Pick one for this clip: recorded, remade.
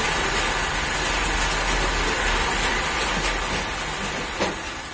recorded